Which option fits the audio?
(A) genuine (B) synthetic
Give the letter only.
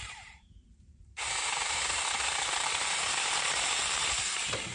B